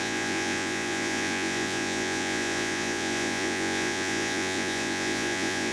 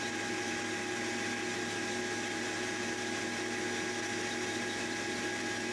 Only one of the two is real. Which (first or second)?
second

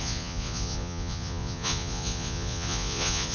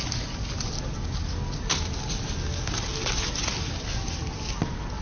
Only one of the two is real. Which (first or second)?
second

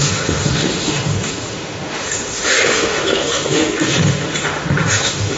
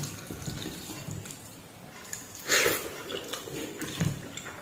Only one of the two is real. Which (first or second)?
second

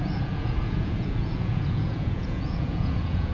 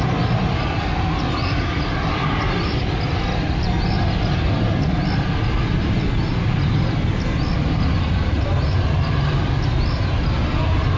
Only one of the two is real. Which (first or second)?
second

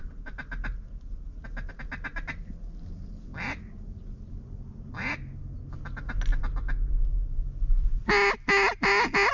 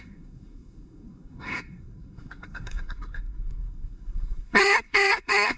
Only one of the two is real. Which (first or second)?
first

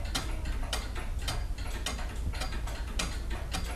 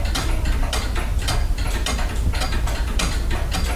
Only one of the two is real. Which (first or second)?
first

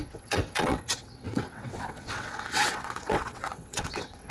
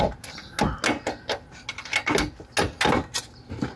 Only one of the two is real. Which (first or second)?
second